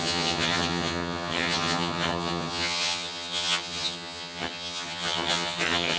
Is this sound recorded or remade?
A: remade